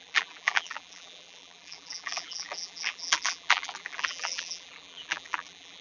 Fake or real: fake